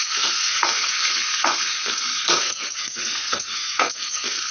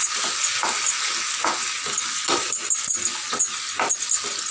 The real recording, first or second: second